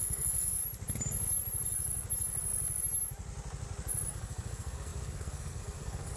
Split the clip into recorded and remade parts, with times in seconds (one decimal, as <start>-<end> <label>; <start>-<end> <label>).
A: 0.0-0.6 remade; 0.6-4.1 recorded; 4.1-6.2 remade